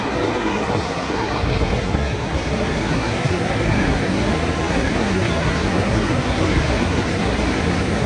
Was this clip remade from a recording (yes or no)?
yes